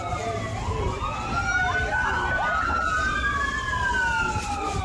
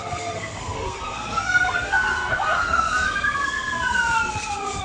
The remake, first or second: second